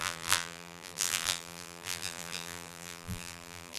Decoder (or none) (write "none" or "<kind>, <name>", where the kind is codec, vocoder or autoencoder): vocoder, BigVGAN v2